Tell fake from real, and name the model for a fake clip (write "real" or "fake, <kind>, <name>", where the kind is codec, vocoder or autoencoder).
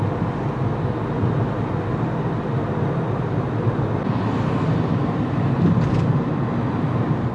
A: real